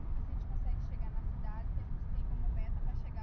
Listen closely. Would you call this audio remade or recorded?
recorded